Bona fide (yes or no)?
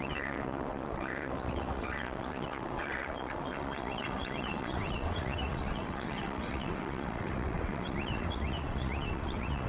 no